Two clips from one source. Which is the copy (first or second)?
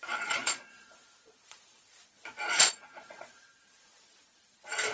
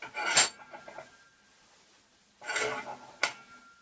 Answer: first